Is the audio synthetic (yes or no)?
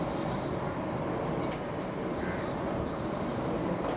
yes